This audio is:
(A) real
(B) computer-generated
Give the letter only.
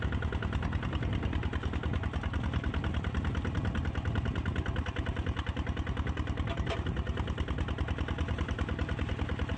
A